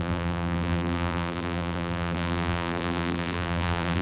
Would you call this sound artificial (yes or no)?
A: yes